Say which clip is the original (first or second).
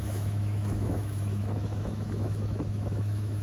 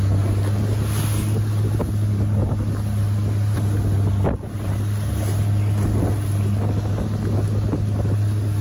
second